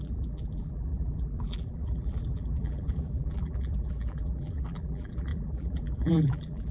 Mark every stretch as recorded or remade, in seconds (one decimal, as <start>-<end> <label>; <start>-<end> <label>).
0.0-6.7 remade